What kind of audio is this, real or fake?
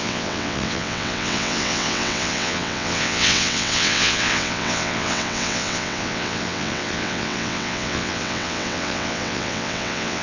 fake